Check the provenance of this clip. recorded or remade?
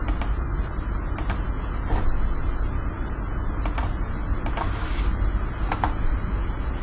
recorded